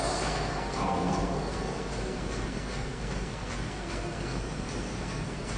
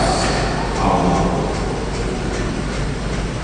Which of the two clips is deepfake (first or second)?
first